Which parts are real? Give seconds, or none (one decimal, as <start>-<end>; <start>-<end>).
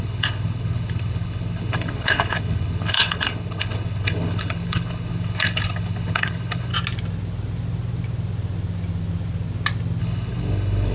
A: 6.7-10.0